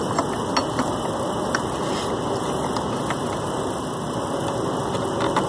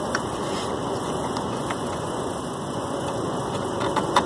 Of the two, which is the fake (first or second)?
second